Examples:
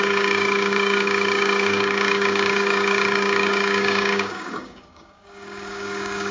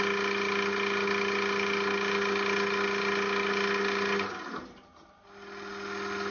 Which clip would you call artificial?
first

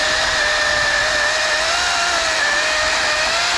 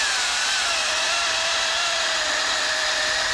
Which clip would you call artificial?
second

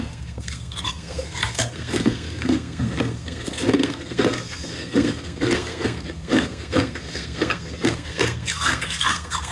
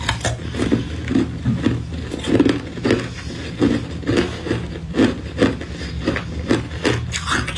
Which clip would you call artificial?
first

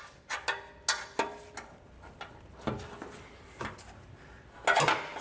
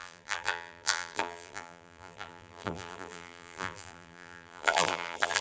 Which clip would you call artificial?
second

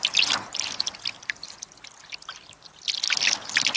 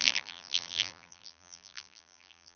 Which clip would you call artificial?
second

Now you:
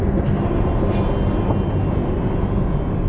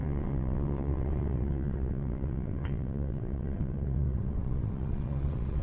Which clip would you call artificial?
second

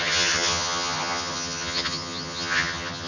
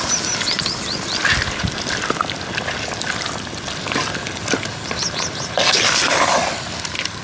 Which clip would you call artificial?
first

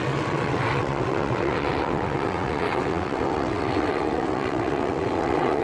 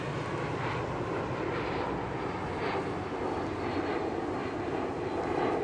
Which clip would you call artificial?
first